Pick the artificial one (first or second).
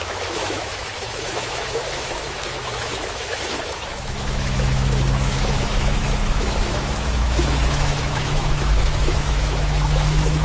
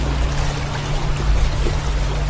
first